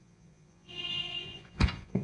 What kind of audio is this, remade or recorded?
remade